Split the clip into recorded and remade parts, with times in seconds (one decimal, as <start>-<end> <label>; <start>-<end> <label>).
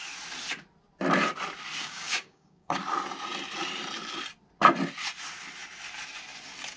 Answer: 0.0-1.8 recorded; 1.8-2.8 remade; 2.8-6.8 recorded